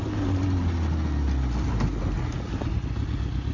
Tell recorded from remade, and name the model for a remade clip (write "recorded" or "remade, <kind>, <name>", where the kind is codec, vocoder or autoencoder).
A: recorded